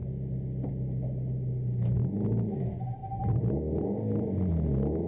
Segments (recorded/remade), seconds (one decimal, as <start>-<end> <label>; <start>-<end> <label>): 0.0-3.0 recorded; 3.0-4.5 remade; 4.5-5.1 recorded